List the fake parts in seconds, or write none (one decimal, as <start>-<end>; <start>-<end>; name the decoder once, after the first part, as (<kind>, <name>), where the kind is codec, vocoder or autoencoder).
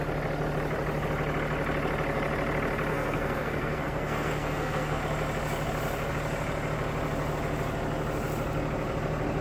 2.9-5.0 (codec, SNAC)